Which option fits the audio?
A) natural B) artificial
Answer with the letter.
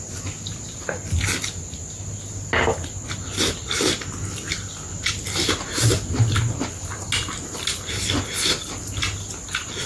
A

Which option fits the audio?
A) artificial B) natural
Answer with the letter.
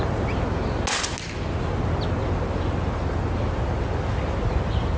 B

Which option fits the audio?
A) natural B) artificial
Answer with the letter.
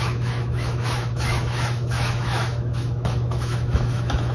B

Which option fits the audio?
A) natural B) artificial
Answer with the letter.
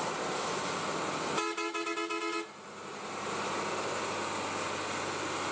A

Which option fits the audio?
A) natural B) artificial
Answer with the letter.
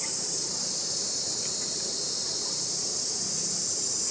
B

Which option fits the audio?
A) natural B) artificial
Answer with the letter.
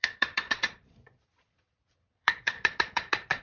B